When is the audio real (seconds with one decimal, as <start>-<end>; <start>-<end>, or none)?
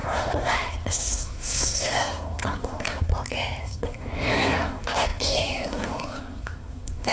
3.1-3.6